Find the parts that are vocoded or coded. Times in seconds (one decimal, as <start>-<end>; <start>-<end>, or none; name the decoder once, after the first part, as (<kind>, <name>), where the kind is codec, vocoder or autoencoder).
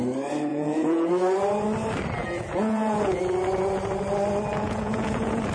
0.5-1.1 (vocoder, Vocos); 2.2-3.2; 4.5-5.5